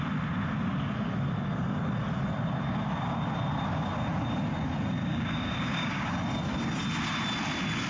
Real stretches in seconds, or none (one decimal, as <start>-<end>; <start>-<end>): 0.0-5.0; 6.1-7.9